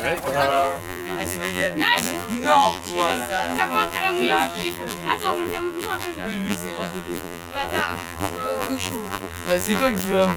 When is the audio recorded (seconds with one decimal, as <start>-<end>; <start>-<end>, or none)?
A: 0.0-0.5